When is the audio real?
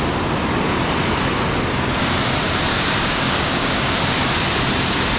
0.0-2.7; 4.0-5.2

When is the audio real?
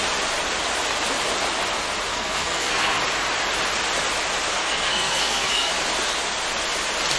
0.0-2.1; 3.0-4.5; 5.7-7.2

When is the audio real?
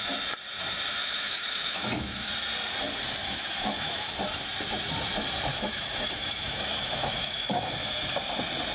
0.0-1.0; 2.3-3.2; 4.1-5.5; 7.7-8.7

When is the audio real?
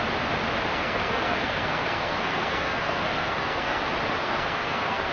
0.0-0.7; 3.8-4.2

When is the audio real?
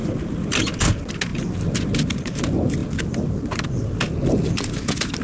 0.6-5.2